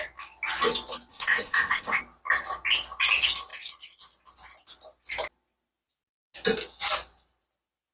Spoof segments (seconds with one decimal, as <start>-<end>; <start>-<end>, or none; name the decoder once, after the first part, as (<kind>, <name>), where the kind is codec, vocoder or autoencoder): 1.1-2.0 (codec, ZipCodec)